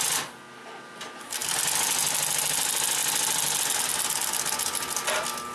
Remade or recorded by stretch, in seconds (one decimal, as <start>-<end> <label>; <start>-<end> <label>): 0.0-5.5 recorded